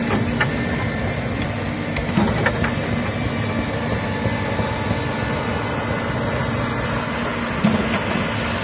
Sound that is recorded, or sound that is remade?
recorded